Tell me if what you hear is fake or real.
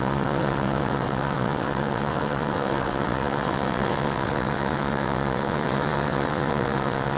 fake